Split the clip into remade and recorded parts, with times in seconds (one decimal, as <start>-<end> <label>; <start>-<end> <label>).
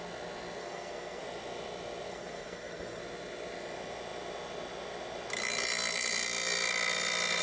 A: 0.0-0.6 recorded; 0.6-1.2 remade; 1.2-2.1 recorded; 2.1-3.0 remade; 3.0-7.4 recorded